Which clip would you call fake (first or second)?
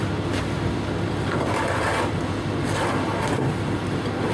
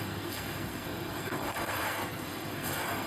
second